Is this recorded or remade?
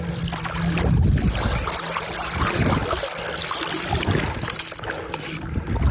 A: recorded